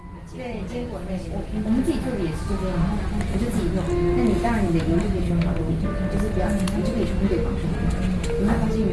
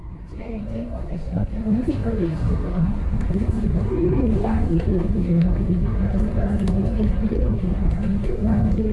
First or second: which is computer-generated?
second